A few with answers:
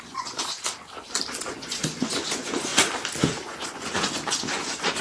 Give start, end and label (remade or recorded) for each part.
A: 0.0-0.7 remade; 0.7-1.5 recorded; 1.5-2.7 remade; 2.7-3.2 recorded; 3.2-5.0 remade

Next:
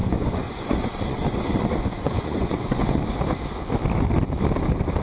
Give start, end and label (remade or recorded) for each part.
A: 0.0-3.0 remade; 3.0-5.0 recorded

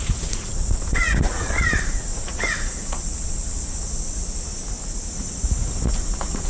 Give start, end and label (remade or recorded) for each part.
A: 0.0-4.5 remade; 4.5-5.0 recorded; 5.0-6.5 remade